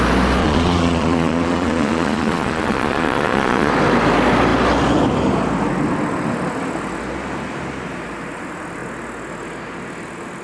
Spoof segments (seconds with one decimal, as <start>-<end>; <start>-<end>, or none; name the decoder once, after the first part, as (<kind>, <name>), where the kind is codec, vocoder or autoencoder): 0.4-3.7 (vocoder, Vocos)